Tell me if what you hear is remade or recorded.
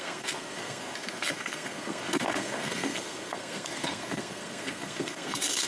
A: remade